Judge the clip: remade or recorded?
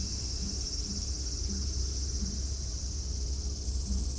remade